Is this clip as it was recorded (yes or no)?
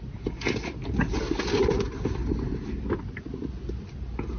yes